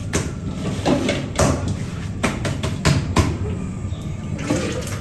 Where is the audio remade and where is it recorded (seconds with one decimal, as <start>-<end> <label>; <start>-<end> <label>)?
0.0-5.0 recorded